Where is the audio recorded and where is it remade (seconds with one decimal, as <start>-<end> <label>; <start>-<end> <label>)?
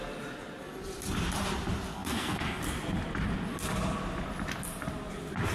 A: 0.0-1.9 recorded; 1.9-2.6 remade; 2.6-5.5 recorded